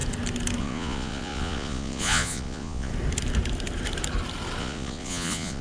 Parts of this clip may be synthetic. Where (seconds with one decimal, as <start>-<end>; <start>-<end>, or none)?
0.6-2.9; 4.6-5.6